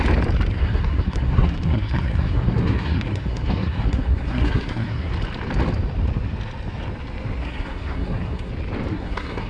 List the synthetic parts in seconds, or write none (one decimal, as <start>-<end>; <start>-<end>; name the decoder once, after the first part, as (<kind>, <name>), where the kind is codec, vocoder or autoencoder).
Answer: 0.5-5.1 (codec, SNAC); 7.4-8.5; 8.9-9.5